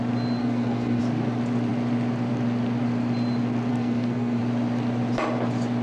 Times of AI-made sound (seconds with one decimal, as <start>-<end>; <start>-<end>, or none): 0.4-1.0; 3.7-4.4